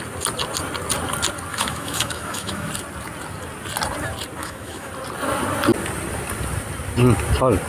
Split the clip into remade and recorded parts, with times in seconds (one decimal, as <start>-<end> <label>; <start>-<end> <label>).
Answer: 0.0-1.5 recorded; 1.5-2.7 remade; 2.7-4.4 recorded; 4.4-4.9 remade; 4.9-7.7 recorded